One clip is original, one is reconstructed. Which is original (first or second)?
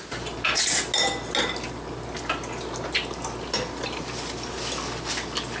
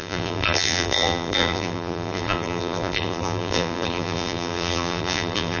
first